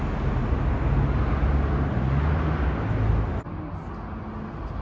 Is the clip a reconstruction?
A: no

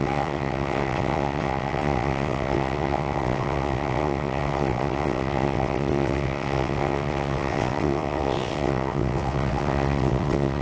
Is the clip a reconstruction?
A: yes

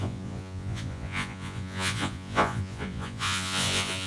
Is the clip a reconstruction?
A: yes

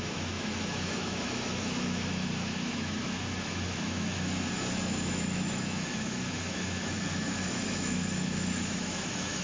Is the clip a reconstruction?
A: yes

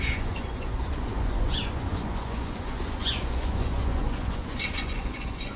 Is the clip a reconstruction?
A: yes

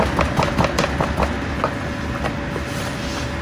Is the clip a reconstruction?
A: no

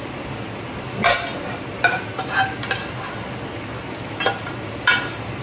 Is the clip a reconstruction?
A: no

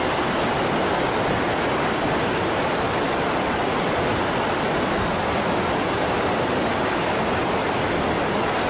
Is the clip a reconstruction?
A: no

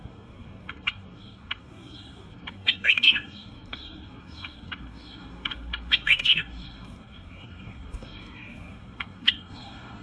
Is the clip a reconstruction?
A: yes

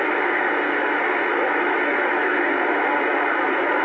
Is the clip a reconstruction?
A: no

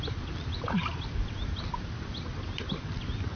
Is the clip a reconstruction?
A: no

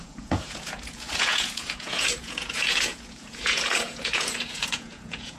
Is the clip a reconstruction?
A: yes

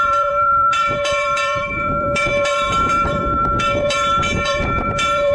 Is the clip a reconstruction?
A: yes